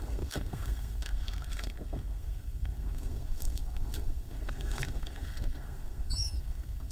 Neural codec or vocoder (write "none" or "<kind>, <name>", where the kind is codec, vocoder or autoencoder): codec, SNAC